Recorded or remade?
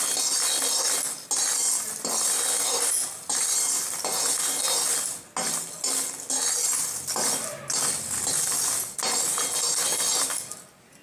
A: recorded